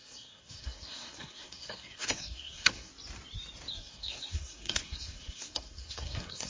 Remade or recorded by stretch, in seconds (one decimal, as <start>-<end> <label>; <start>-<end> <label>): 0.0-2.9 remade; 2.9-3.7 recorded; 3.7-6.5 remade